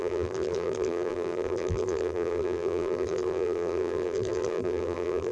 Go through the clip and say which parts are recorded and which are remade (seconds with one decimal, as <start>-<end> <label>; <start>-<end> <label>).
0.0-5.3 remade